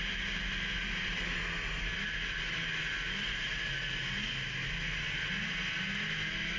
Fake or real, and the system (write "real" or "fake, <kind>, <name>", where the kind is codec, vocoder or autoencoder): real